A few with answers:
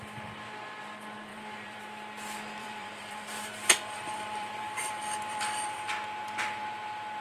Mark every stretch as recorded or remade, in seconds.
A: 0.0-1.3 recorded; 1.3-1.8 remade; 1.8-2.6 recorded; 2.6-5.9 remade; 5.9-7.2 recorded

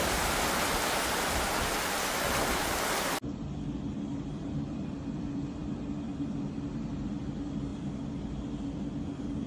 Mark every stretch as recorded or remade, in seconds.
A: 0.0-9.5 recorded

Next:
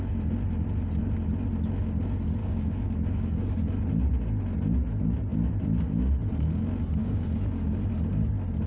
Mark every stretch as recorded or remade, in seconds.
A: 0.0-2.4 recorded; 2.4-3.6 remade; 3.6-7.0 recorded; 7.0-7.9 remade; 7.9-8.7 recorded

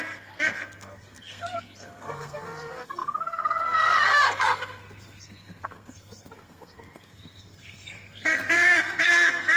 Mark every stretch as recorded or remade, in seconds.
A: 0.0-9.6 remade

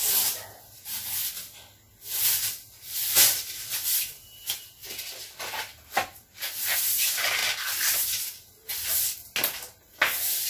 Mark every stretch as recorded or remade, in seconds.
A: 0.0-10.5 recorded

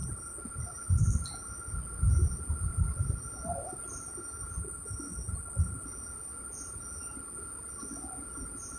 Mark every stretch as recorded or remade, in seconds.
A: 0.0-8.8 remade

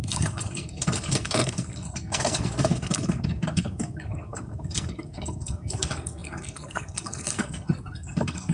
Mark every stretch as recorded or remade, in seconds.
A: 0.0-8.5 remade